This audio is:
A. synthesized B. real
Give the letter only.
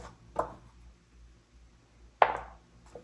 B